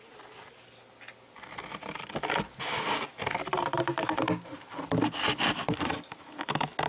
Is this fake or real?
real